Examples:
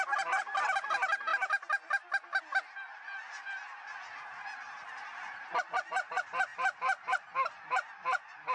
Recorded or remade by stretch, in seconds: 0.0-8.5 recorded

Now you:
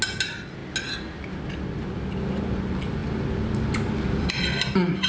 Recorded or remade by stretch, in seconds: 0.0-5.1 recorded

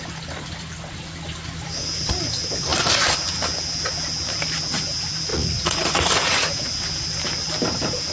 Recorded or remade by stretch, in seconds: 0.0-5.3 recorded; 5.3-6.7 remade; 6.7-8.1 recorded

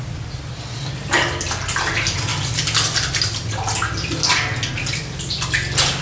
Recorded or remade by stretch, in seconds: 0.0-6.0 recorded

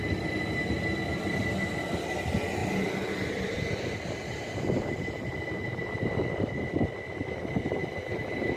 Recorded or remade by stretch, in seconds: 0.0-8.6 recorded